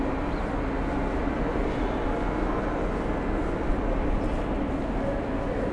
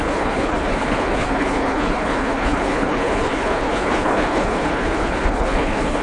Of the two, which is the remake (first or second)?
second